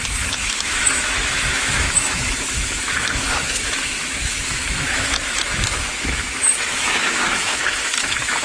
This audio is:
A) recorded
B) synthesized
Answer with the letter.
B